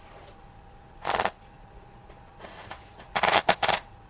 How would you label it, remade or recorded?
remade